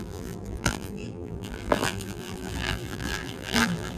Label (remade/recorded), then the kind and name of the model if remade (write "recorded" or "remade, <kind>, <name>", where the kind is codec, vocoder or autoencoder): remade, vocoder, BigVGAN v2